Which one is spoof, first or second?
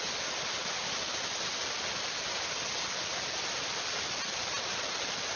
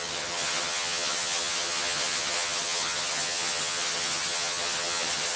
second